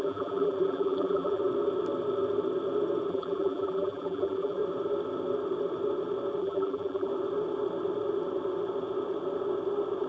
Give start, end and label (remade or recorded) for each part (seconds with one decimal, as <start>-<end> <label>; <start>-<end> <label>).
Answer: 0.0-1.4 remade; 1.4-3.1 recorded; 3.1-4.6 remade; 4.6-6.4 recorded; 6.4-7.1 remade; 7.1-10.1 recorded